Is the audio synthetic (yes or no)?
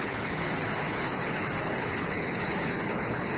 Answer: yes